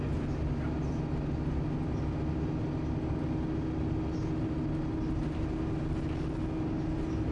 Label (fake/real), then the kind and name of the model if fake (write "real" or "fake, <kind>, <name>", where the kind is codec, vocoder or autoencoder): real